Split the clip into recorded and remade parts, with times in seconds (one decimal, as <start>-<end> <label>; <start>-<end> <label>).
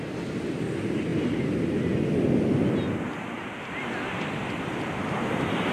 0.0-5.7 recorded